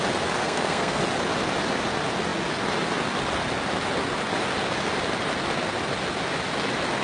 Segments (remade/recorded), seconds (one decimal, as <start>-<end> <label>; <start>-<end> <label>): 0.0-0.4 recorded; 0.4-1.0 remade; 1.0-7.0 recorded